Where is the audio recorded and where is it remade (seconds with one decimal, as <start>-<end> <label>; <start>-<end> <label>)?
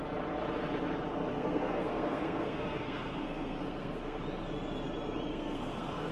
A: 0.0-1.3 recorded; 1.3-4.2 remade; 4.2-5.3 recorded; 5.3-6.1 remade